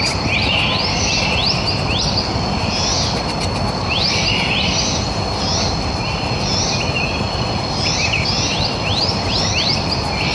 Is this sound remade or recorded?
recorded